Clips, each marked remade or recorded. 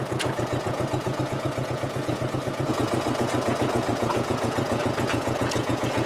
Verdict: remade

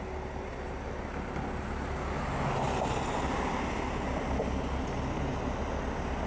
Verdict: recorded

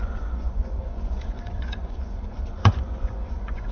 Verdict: remade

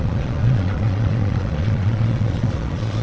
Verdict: remade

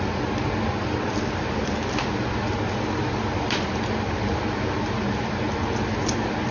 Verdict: recorded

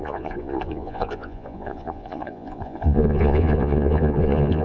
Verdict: remade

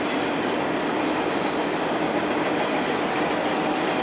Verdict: recorded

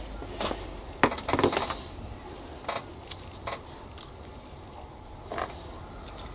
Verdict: recorded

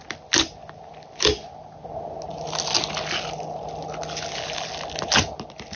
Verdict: recorded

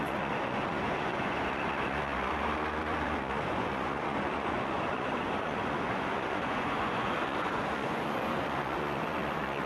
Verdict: remade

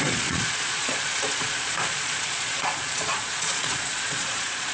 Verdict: remade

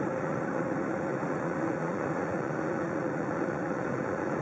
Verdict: remade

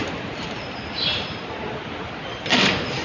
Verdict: recorded